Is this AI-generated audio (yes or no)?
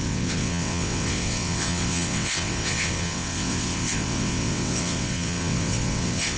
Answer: yes